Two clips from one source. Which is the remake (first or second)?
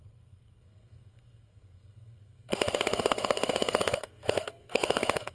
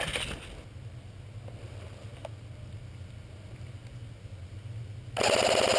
first